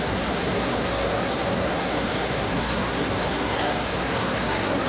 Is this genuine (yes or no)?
no